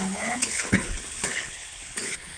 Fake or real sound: fake